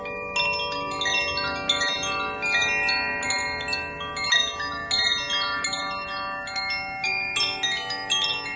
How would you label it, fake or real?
real